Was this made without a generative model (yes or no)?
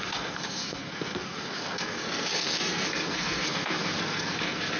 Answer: no